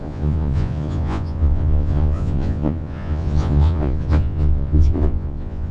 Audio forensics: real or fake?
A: fake